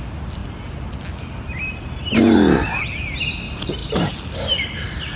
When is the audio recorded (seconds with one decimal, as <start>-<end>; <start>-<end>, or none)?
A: 0.0-5.2